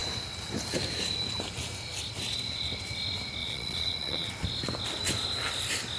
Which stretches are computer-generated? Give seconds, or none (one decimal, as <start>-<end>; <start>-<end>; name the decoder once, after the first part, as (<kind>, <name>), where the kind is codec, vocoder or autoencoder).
3.4-4.3 (vocoder, Vocos)

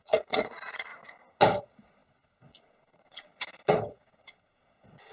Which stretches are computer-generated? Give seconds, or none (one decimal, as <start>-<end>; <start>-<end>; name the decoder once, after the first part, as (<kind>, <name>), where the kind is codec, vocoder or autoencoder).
0.0-0.9 (vocoder, Vocos); 1.6-3.3; 3.9-5.1

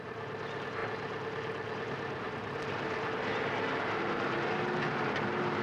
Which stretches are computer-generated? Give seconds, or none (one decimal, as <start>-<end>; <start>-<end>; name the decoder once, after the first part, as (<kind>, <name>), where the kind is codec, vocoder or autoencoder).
none

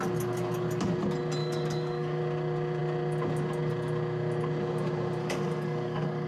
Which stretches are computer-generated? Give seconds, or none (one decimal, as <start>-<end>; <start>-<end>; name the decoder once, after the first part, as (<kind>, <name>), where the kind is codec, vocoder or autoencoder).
1.4-2.2 (codec, DAC); 5.2-6.3

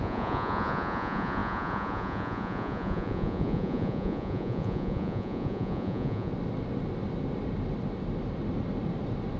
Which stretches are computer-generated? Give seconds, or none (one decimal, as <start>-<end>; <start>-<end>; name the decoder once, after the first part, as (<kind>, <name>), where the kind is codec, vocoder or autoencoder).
0.0-6.3 (vocoder, Vocos)